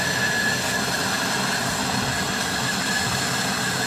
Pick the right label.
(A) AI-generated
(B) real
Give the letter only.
B